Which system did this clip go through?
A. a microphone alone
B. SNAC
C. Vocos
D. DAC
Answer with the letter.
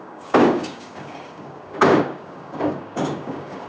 D